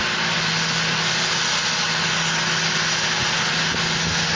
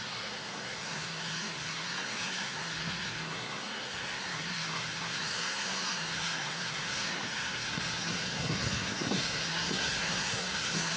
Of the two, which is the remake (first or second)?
second